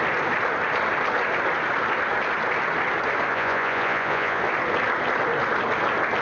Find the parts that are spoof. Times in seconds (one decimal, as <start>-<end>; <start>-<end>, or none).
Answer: 3.3-4.4